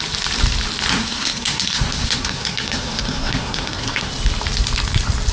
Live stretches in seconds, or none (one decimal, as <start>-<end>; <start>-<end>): 0.0-0.9; 4.1-5.3